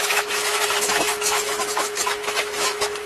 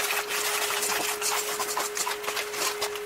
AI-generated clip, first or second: first